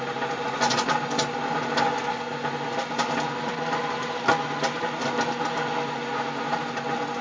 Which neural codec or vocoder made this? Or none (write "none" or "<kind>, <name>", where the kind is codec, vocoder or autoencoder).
none